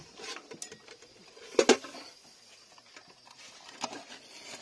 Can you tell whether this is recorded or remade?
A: recorded